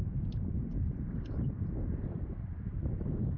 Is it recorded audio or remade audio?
recorded